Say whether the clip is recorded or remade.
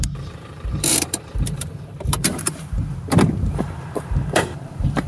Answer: remade